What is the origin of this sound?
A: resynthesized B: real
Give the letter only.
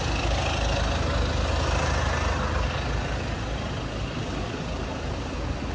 B